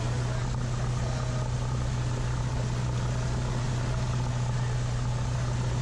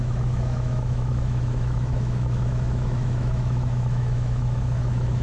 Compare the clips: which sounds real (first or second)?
first